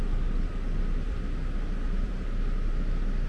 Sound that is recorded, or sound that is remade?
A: recorded